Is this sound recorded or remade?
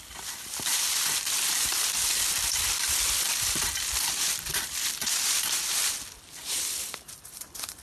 remade